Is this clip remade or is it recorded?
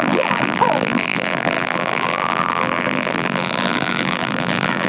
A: remade